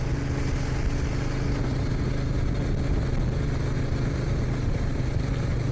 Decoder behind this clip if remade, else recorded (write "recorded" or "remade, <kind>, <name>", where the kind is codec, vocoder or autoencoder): recorded